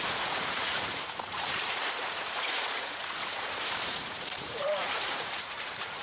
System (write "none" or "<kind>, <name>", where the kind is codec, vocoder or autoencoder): vocoder, Vocos